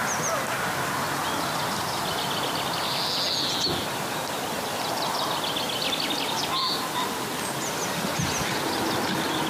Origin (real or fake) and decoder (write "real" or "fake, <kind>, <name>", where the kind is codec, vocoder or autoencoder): real